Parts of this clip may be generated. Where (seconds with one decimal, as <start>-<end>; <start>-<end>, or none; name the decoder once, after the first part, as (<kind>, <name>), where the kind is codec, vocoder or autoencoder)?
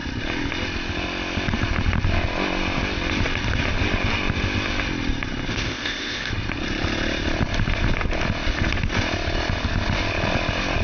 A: 5.5-6.3 (codec, ZipCodec)